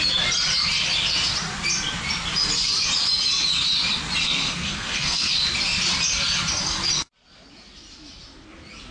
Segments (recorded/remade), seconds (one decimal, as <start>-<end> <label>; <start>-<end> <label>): 0.0-4.2 recorded; 4.2-5.3 remade; 5.3-8.9 recorded